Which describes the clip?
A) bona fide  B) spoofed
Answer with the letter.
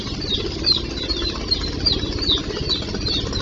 A